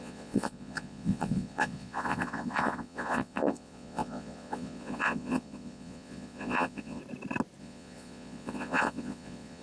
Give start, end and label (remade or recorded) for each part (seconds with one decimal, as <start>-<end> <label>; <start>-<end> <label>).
0.0-7.0 remade; 7.0-7.6 recorded; 7.6-9.6 remade